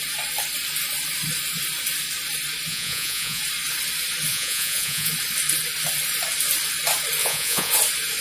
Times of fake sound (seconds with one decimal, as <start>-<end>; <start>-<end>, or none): 2.7-3.4; 4.3-5.1; 7.2-7.7